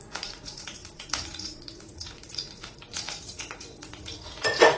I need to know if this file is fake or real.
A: fake